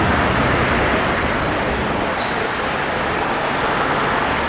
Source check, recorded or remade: recorded